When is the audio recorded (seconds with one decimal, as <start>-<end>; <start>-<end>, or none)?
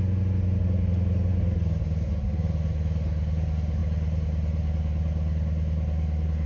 0.0-6.5